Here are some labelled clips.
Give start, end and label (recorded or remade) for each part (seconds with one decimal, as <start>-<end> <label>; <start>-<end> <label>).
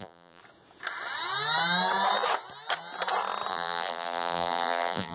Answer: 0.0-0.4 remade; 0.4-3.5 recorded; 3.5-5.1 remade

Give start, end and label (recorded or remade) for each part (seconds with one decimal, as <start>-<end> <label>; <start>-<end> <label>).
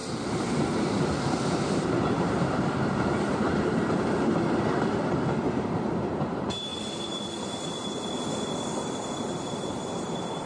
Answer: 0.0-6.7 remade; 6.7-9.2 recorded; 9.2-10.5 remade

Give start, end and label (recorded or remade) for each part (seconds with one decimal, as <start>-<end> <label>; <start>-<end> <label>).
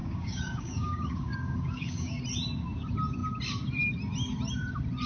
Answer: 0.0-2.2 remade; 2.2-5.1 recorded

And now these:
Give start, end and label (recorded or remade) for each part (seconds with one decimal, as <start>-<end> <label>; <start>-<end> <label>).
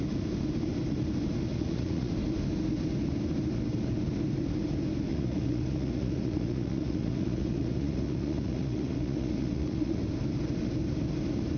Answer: 0.0-1.5 recorded; 1.5-2.1 remade; 2.1-5.1 recorded; 5.1-10.0 remade; 10.0-11.6 recorded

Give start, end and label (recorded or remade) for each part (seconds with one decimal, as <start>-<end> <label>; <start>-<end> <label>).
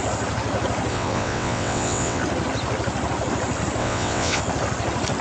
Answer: 0.0-0.9 recorded; 0.9-2.2 remade; 2.2-3.8 recorded; 3.8-4.4 remade; 4.4-5.2 recorded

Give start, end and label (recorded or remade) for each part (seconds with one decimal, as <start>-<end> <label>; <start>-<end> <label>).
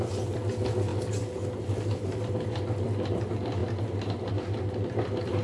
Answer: 0.0-5.4 recorded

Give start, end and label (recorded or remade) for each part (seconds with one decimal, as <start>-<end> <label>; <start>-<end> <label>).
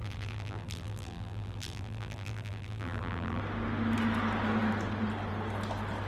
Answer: 0.0-3.4 remade; 3.4-6.1 recorded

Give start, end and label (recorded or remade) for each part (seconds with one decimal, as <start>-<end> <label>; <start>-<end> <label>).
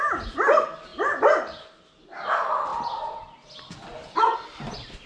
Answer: 0.0-5.1 recorded